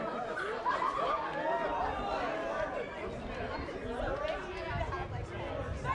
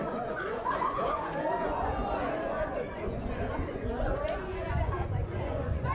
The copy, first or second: second